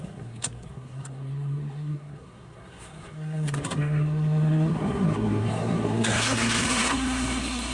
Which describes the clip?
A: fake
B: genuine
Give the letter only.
A